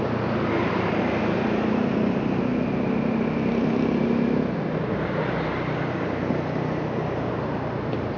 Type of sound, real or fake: real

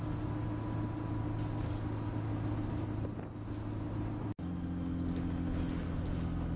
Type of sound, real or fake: real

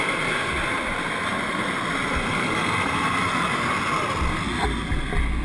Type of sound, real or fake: real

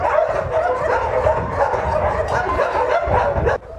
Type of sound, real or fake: real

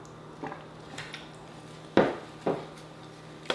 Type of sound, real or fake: real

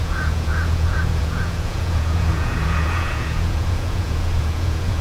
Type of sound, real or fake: fake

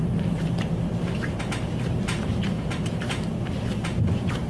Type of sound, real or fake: fake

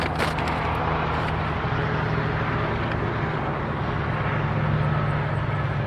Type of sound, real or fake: real